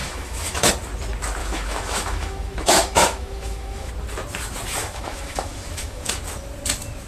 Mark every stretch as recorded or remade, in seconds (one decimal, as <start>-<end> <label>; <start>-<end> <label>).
0.0-0.7 remade; 0.7-1.4 recorded; 1.4-3.9 remade; 3.9-4.8 recorded; 4.8-6.2 remade; 6.2-7.1 recorded